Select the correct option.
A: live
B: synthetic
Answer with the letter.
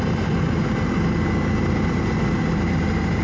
B